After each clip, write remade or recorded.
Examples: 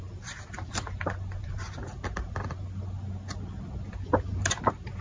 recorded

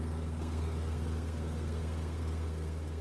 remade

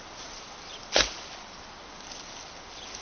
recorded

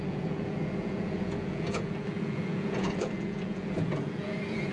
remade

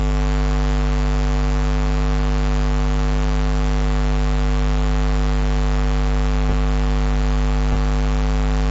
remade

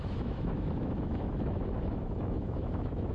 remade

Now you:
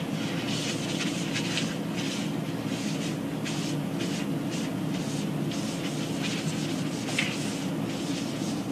recorded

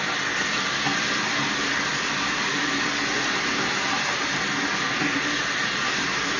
recorded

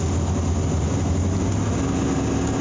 recorded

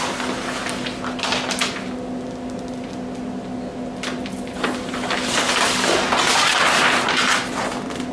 recorded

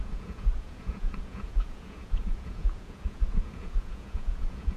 remade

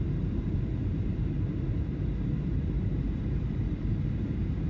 remade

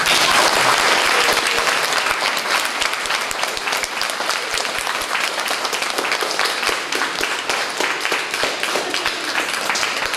recorded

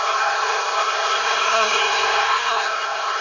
remade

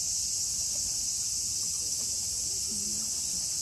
recorded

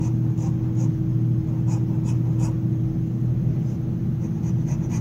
recorded